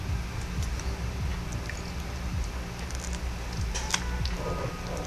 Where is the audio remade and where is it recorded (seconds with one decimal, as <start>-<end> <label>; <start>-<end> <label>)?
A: 0.0-5.1 recorded